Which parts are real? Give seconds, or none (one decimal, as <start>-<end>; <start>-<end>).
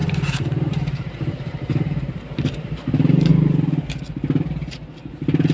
3.3-5.5